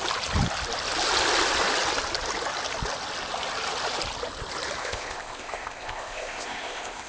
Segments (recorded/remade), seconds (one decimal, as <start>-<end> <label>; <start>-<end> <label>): 0.0-4.8 recorded; 4.8-7.1 remade